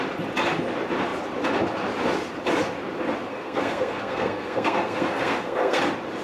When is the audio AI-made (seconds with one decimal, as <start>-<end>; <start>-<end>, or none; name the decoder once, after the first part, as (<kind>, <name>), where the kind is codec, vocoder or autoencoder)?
3.3-5.8 (codec, SNAC)